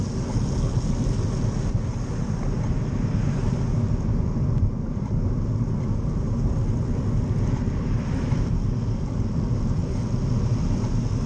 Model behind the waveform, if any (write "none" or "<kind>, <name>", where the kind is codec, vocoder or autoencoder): none